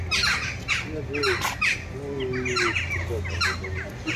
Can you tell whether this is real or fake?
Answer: real